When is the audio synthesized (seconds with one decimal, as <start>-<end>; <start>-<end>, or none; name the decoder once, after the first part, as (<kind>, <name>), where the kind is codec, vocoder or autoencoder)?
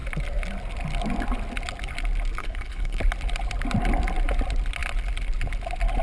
2.4-3.0 (codec, HILCodec)